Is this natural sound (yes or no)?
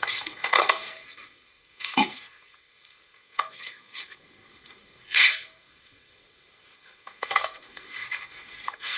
no